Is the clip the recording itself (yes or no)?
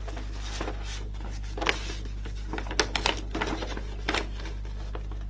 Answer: yes